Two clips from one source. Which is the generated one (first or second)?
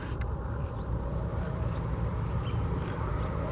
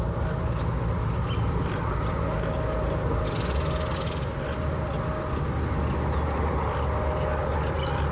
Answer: first